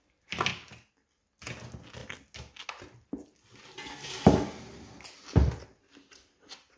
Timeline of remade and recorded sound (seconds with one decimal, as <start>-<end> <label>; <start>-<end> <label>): 0.0-6.8 recorded